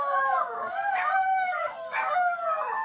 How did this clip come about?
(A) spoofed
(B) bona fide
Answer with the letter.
A